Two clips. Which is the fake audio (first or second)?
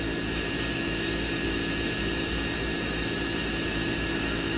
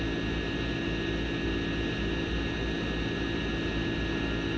first